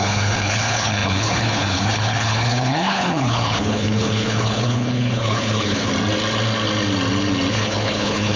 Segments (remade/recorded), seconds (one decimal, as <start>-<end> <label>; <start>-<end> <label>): 0.0-5.9 remade; 5.9-7.5 recorded; 7.5-8.4 remade